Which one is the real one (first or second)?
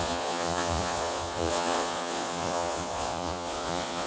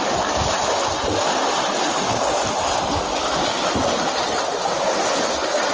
second